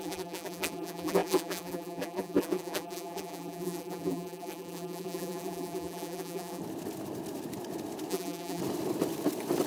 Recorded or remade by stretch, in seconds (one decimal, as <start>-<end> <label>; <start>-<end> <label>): 0.0-6.6 remade; 6.6-8.1 recorded; 8.1-8.6 remade; 8.6-9.7 recorded